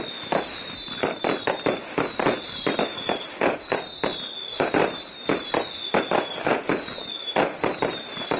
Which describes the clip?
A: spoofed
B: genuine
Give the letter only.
B